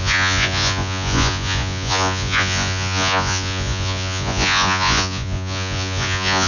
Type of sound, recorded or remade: remade